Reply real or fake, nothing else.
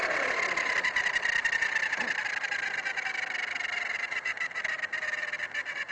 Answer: real